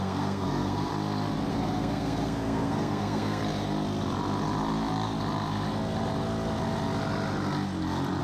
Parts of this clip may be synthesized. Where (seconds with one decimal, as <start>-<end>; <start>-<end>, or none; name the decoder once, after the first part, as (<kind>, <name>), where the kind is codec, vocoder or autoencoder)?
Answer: 0.0-0.9 (codec, SNAC); 1.5-3.4